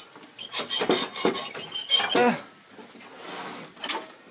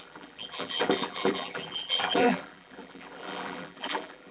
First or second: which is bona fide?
first